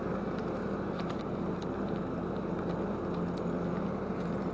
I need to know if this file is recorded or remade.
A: recorded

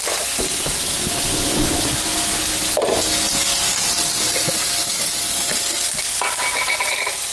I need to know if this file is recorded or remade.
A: recorded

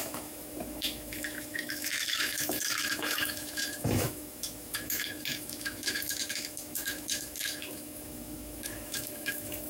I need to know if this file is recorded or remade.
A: remade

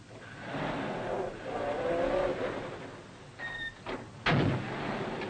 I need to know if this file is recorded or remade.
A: recorded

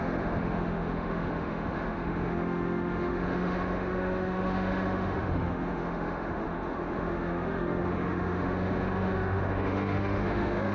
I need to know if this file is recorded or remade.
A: remade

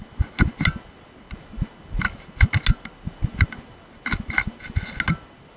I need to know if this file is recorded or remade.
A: recorded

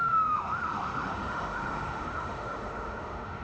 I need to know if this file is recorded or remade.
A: remade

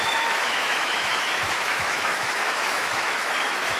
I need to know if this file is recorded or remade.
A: remade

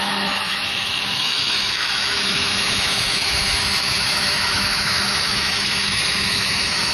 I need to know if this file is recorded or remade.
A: remade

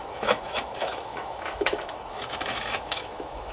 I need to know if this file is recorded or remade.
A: remade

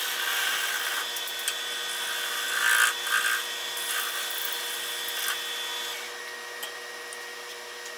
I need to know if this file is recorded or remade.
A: recorded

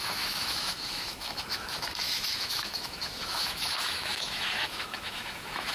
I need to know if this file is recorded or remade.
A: remade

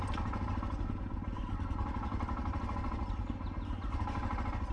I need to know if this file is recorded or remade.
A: recorded